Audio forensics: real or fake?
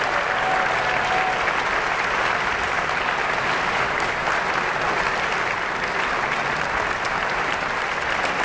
real